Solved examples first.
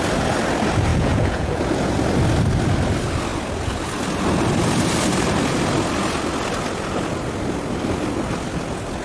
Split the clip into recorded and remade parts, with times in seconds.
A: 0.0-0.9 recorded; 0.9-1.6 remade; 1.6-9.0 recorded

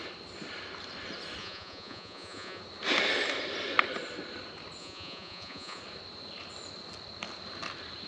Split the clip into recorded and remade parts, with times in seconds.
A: 0.0-1.4 recorded; 1.4-2.6 remade; 2.6-4.8 recorded; 4.8-5.8 remade; 5.8-8.1 recorded